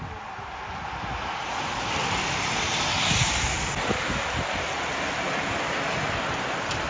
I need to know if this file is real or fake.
real